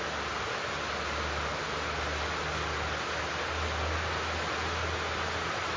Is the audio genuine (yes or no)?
yes